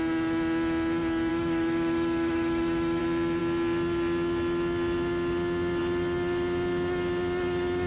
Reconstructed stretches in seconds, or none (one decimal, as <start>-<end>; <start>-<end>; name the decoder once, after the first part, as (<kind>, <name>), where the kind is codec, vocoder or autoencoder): 1.3-3.0 (autoencoder, DAC-VAE)